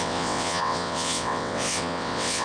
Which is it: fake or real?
fake